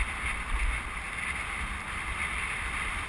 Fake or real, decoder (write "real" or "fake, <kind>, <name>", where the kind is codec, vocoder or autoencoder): real